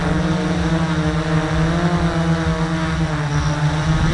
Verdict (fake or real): real